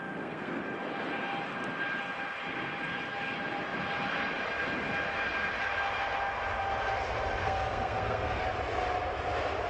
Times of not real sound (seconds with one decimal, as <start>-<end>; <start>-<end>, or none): 0.0-0.6; 7.4-8.4